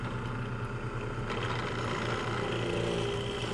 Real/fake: real